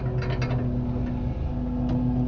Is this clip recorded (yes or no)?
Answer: yes